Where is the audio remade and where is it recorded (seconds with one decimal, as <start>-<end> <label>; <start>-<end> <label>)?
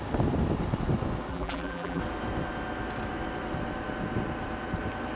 0.0-1.3 recorded; 1.3-2.0 remade; 2.0-5.2 recorded